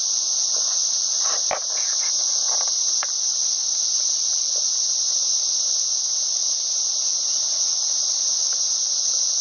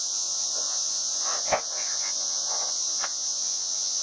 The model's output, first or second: second